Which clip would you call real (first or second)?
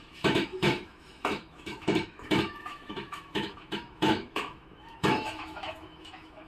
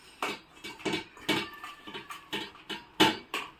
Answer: second